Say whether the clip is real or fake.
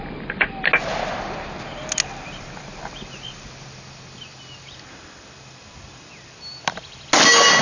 real